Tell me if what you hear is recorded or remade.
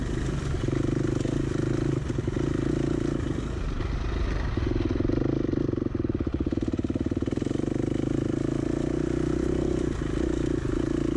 recorded